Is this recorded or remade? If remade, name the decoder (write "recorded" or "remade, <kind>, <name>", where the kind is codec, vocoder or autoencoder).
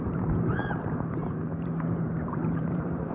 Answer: remade, vocoder, BigVGAN v2